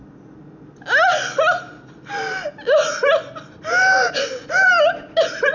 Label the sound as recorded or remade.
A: recorded